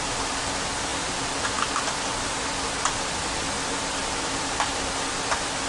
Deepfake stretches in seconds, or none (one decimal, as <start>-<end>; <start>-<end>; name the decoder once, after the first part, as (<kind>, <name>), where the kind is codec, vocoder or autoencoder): none